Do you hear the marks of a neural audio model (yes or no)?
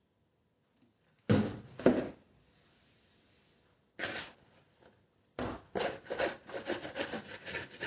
no